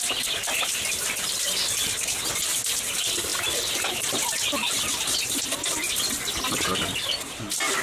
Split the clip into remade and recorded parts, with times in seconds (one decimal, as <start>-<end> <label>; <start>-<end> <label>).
0.0-7.8 recorded